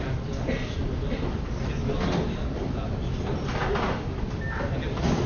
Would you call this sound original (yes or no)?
yes